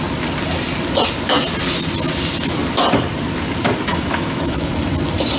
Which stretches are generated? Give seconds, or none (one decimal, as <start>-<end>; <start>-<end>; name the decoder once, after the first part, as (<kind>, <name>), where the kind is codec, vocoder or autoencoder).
3.9-4.7 (autoencoder, DAC-VAE)